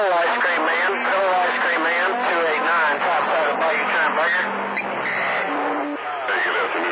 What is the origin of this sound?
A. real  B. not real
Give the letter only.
A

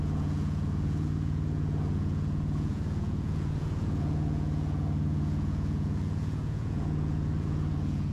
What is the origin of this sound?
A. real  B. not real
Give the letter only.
B